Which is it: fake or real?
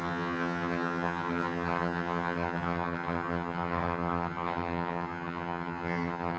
fake